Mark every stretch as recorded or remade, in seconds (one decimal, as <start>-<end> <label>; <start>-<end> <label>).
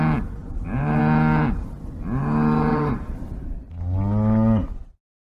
0.0-0.4 recorded; 0.4-1.0 remade; 1.0-2.7 recorded; 2.7-3.3 remade; 3.3-5.2 recorded